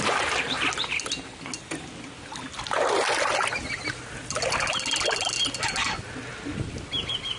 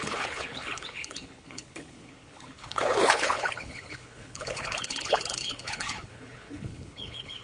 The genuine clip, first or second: first